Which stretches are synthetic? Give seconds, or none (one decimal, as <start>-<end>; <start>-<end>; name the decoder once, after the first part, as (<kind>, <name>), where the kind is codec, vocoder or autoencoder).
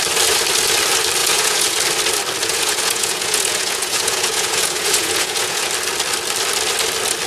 1.2-1.8 (vocoder, Vocos); 2.4-5.7